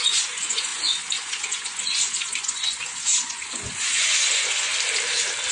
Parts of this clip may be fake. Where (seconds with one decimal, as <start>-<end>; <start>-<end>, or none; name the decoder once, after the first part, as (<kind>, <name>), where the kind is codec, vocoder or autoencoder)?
0.0-4.7 (vocoder, Vocos)